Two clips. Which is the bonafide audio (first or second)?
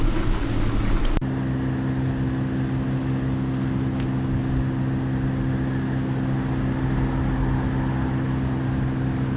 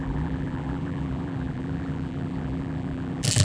first